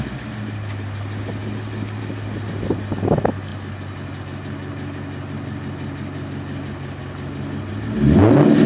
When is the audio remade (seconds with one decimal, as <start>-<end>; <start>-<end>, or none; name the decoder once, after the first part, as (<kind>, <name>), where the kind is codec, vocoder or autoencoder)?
none